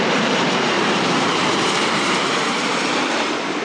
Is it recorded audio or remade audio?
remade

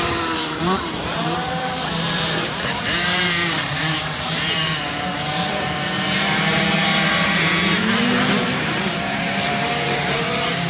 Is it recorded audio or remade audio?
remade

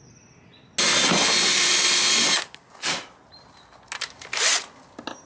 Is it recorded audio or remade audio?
recorded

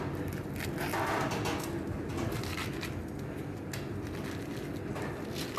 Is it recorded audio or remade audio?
recorded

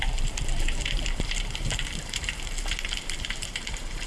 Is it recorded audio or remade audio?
remade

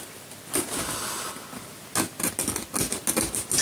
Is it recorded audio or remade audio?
recorded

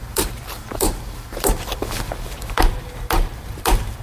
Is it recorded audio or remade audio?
remade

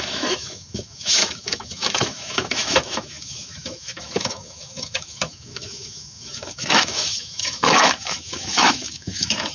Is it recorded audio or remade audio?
remade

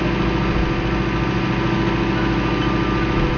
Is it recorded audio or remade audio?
recorded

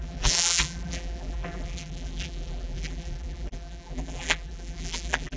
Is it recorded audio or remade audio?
remade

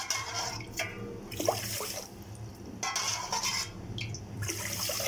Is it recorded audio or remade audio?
recorded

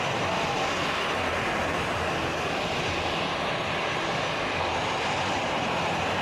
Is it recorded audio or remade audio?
recorded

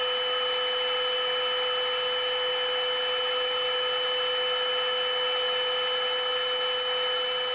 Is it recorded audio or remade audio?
recorded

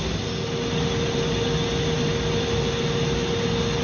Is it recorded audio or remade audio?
recorded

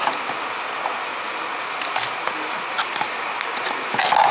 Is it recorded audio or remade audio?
recorded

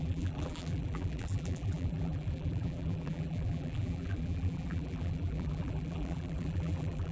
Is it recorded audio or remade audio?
remade